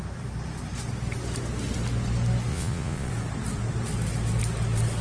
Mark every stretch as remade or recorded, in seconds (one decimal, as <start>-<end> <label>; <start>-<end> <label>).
0.0-2.5 recorded; 2.5-3.1 remade; 3.1-5.0 recorded